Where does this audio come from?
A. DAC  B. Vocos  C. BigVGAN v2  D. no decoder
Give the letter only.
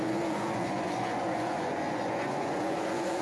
B